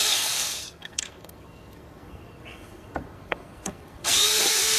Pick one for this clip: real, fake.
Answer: fake